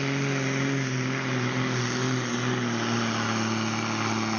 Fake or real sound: real